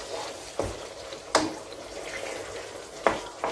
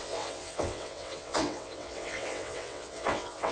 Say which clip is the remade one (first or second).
second